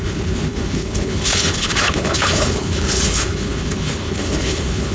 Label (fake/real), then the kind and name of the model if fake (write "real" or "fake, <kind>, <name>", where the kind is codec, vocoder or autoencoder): fake, codec, HILCodec